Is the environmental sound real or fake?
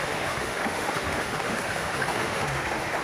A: fake